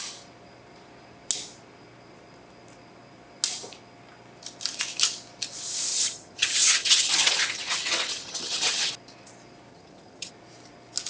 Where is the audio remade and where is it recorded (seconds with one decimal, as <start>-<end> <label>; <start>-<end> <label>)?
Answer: 0.0-5.9 recorded; 5.9-8.9 remade; 8.9-9.7 recorded; 9.7-10.3 remade; 10.3-11.1 recorded